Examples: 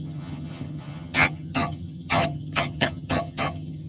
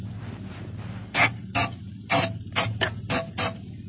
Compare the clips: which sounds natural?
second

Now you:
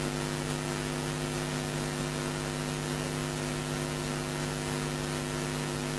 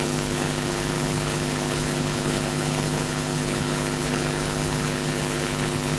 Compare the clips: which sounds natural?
first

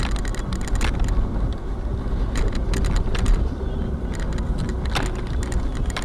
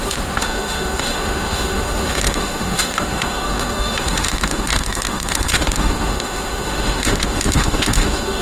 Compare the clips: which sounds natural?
first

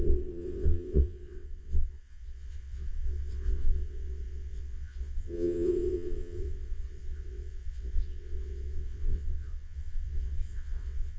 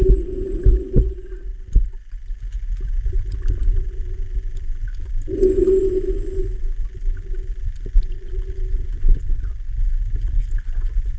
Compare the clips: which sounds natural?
second